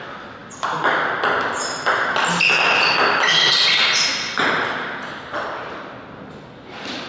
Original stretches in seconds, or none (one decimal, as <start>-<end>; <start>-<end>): 0.0-7.1